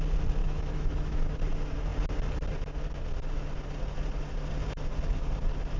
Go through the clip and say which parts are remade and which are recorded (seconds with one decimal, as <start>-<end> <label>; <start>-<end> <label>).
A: 0.0-0.4 recorded; 0.4-1.4 remade; 1.4-5.8 recorded